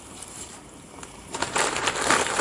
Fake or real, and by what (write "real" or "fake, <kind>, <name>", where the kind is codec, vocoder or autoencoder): fake, vocoder, BigVGAN v2